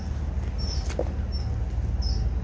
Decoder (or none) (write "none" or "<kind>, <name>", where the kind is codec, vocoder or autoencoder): none